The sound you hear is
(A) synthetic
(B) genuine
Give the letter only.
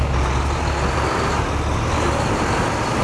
B